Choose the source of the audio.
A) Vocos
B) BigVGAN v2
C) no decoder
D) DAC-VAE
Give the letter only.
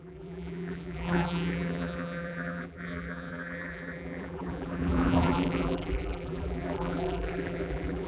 B